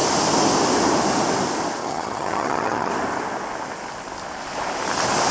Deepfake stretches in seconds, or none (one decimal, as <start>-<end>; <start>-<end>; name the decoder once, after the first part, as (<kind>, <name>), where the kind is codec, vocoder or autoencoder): 1.8-2.9 (vocoder, HiFi-GAN)

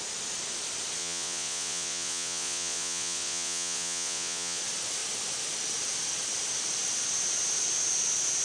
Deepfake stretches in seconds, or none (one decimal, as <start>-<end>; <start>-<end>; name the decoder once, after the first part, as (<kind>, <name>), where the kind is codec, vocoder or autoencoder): 1.0-4.6 (vocoder, Vocos)

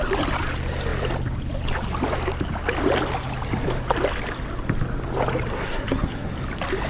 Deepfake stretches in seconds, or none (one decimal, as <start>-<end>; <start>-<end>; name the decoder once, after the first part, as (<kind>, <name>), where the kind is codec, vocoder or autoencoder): 5.5-6.3 (codec, SNAC)